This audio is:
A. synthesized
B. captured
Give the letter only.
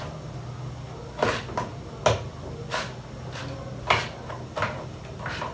B